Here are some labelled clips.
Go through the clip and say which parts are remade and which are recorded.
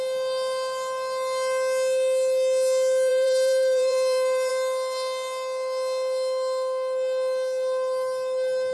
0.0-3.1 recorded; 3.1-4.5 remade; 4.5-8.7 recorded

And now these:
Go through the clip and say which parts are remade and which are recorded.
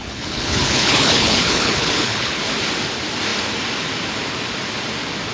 0.0-2.4 remade; 2.4-5.3 recorded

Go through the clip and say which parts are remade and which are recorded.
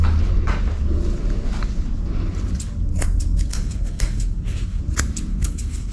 0.0-3.5 recorded; 3.5-4.8 remade; 4.8-5.3 recorded; 5.3-5.9 remade